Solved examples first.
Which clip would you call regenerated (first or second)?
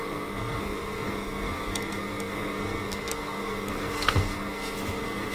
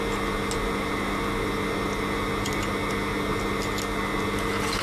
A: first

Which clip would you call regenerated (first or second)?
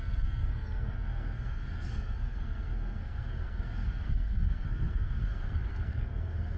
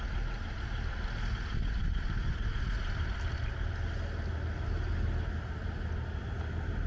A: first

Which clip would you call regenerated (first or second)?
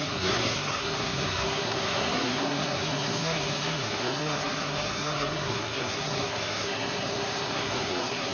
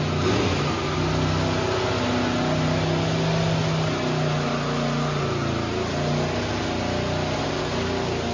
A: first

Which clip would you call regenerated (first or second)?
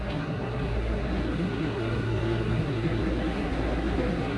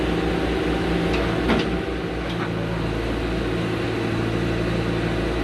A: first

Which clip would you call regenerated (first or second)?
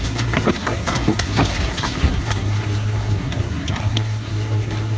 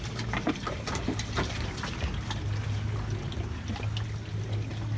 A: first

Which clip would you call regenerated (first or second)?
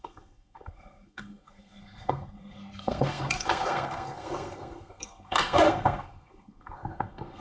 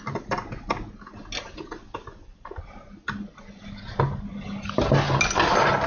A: first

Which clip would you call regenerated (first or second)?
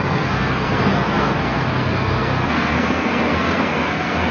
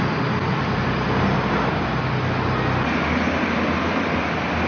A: first